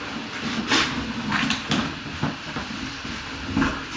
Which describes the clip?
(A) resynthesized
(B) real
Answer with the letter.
B